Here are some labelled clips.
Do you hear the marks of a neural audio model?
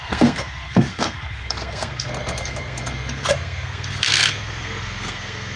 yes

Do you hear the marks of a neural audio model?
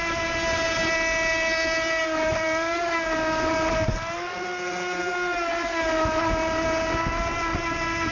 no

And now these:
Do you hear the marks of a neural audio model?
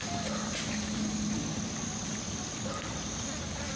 yes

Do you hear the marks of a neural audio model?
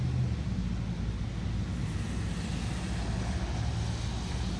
no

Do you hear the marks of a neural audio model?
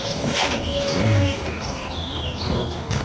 yes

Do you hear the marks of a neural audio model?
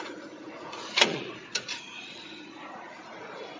yes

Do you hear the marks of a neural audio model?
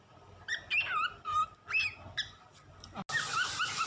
no